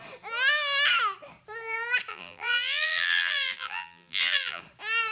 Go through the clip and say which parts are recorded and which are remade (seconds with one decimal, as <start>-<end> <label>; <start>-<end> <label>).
0.0-2.1 recorded; 2.1-4.6 remade; 4.6-5.1 recorded